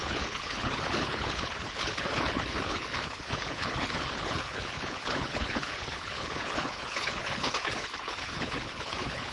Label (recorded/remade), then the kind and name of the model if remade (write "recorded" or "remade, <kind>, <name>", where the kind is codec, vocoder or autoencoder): remade, codec, HILCodec